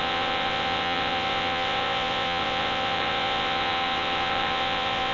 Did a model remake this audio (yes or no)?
yes